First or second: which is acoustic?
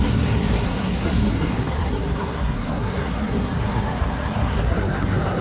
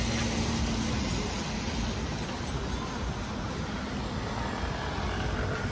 second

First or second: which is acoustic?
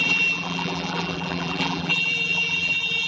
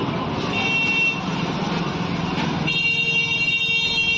second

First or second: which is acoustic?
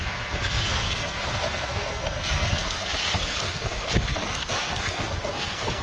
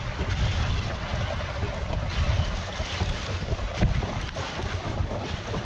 second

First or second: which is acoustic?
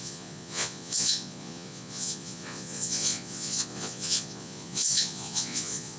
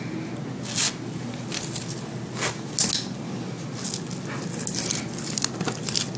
second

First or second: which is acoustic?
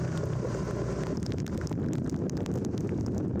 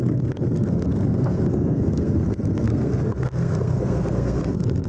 first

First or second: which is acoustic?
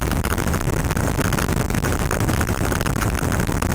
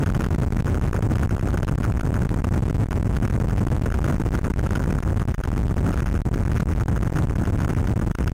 second